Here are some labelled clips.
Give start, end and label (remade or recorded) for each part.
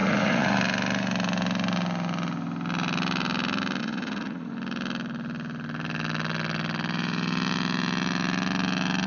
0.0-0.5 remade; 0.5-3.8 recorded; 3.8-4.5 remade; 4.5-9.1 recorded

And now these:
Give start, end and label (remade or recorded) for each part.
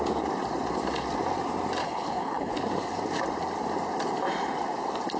0.0-1.8 recorded; 1.8-2.5 remade; 2.5-5.2 recorded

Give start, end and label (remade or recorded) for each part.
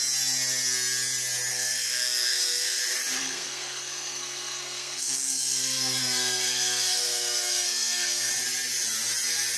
0.0-1.5 recorded; 1.5-2.8 remade; 2.8-3.2 recorded; 3.2-8.3 remade; 8.3-9.6 recorded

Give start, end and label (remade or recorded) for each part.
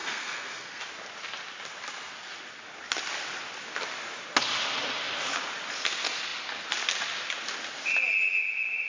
0.0-0.8 remade; 0.8-8.9 recorded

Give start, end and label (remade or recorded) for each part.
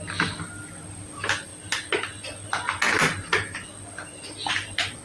0.0-5.0 recorded